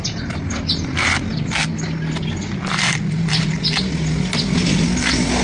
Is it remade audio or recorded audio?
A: recorded